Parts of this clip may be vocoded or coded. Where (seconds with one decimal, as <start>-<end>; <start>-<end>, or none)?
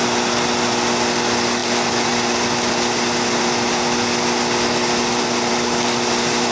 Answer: none